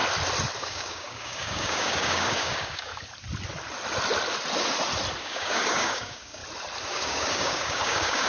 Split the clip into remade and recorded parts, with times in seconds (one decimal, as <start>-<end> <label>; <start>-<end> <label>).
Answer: 0.0-0.6 recorded; 0.6-2.9 remade; 2.9-5.2 recorded; 5.2-6.4 remade; 6.4-6.9 recorded; 6.9-8.3 remade